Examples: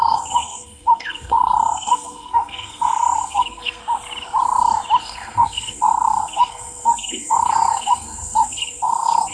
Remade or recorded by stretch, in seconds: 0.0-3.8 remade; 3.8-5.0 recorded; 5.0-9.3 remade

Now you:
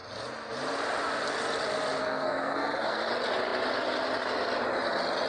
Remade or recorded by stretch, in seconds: 0.0-2.0 recorded; 2.0-3.1 remade; 3.1-5.3 recorded

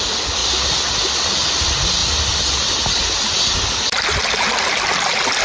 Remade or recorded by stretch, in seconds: 0.0-5.4 recorded

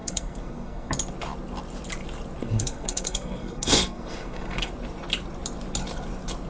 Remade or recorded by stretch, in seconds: 0.0-0.9 remade; 0.9-2.4 recorded; 2.4-4.7 remade; 4.7-6.5 recorded

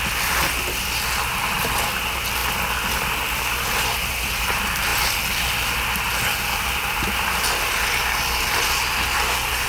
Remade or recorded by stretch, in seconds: 0.0-9.7 recorded

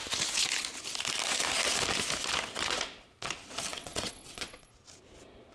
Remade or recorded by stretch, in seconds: 0.0-3.7 recorded; 3.7-4.7 remade; 4.7-5.5 recorded